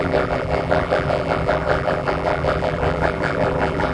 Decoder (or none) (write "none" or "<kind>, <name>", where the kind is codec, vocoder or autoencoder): vocoder, BigVGAN v2